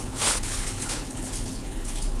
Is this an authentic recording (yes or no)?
no